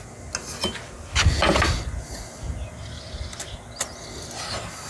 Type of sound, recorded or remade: recorded